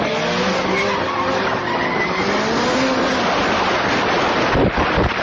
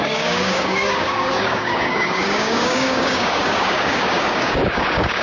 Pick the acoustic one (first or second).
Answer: first